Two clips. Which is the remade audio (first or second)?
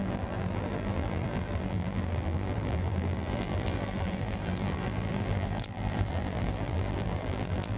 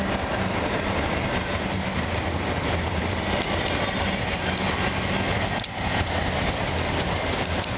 first